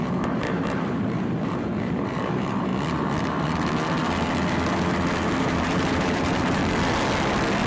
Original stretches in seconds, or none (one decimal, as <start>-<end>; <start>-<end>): 2.7-5.4; 6.6-7.7

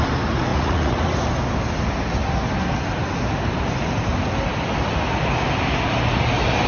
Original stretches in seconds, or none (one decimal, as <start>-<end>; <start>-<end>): 0.0-0.5; 1.0-6.7